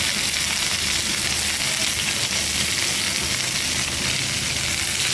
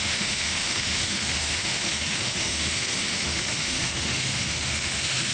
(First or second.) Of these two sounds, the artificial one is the second